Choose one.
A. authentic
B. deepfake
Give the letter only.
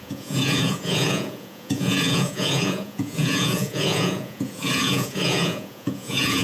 B